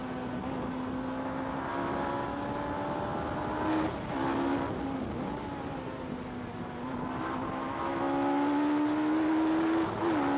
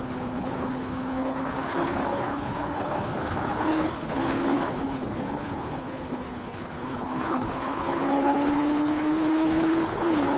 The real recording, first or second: first